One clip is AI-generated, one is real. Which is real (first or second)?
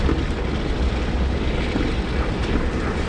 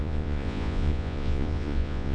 first